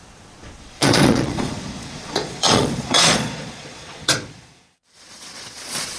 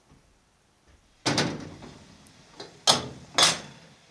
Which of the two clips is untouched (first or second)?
second